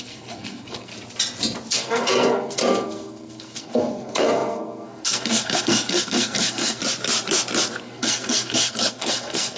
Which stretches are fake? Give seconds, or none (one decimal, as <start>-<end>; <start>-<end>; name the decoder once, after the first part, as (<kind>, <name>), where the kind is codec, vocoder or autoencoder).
0.0-0.9 (codec, SNAC); 1.7-6.8; 7.8-9.6

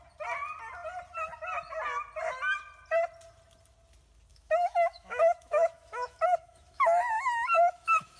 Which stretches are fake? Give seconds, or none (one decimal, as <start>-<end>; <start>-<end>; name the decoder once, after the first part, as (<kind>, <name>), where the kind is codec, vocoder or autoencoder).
4.3-8.2 (autoencoder, DAC-VAE)